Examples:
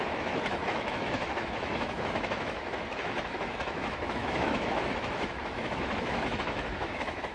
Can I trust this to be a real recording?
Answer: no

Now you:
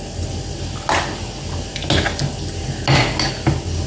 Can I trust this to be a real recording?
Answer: yes